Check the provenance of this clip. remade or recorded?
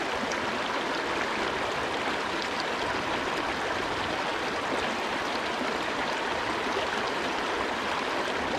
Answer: recorded